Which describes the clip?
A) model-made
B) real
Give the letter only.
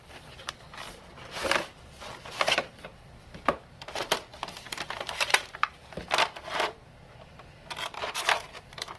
A